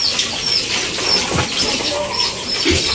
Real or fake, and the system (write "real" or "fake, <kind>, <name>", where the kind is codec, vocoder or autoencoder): real